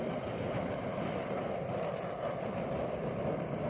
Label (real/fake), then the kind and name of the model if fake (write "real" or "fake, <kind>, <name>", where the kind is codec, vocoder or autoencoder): fake, vocoder, BigVGAN v2